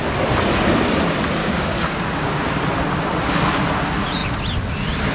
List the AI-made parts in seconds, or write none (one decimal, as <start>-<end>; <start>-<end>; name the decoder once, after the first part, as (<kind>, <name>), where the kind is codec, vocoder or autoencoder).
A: 1.4-2.4 (codec, DAC)